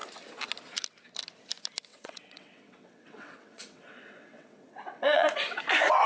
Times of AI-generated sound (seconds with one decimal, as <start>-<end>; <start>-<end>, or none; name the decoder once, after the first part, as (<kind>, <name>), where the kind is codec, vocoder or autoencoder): 1.9-5.6 (vocoder, WaveNeXt)